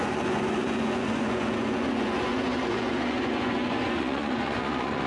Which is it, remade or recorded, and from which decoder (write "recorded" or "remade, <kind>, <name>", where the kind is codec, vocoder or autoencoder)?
remade, vocoder, Vocos